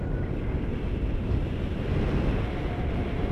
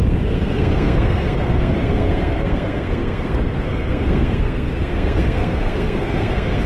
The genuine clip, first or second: first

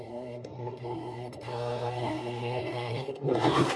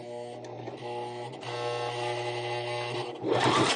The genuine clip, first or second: second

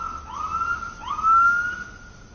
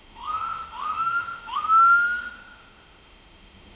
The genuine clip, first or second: first